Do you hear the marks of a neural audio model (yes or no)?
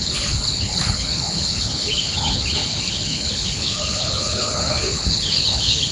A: yes